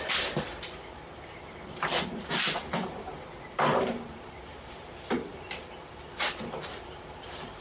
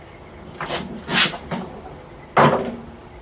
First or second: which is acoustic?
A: second